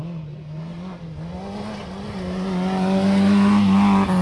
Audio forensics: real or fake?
real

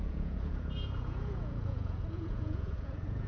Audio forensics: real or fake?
fake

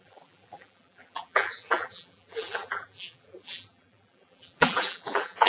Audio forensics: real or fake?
fake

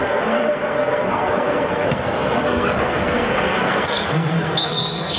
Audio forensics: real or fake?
fake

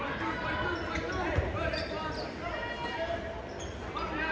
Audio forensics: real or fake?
real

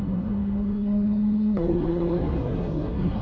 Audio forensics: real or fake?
fake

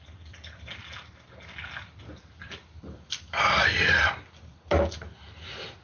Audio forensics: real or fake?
real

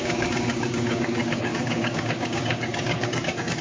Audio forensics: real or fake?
fake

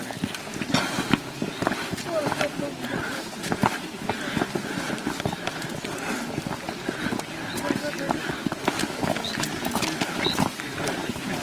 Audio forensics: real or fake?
real